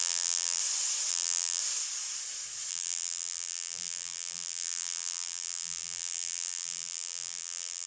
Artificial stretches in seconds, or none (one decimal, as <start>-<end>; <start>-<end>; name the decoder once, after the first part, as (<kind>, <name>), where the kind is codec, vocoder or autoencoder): 0.0-0.6 (vocoder, BigVGAN v2); 1.1-1.6; 2.7-7.9